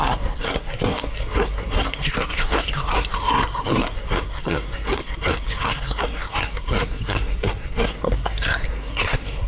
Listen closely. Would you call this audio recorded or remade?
remade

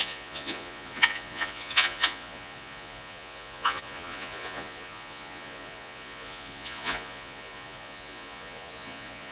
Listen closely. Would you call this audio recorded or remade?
remade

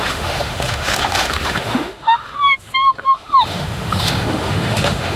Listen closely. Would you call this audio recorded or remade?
remade